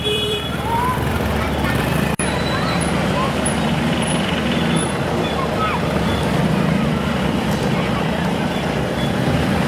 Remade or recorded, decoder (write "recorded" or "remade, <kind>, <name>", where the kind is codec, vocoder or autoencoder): remade, vocoder, BigVGAN v2